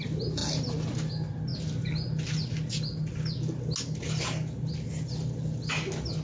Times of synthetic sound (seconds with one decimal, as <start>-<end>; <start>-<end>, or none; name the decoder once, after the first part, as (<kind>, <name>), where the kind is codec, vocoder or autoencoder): none